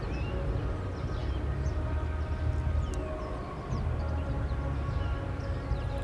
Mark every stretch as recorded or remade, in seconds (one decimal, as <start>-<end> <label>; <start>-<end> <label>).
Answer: 0.0-6.0 recorded